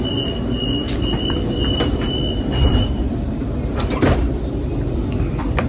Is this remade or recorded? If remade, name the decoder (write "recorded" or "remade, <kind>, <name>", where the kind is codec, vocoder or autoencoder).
remade, vocoder, BigVGAN v2